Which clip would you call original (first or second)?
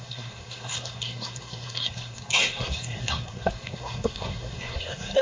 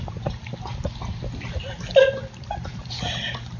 second